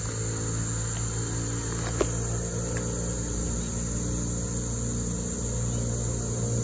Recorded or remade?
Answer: recorded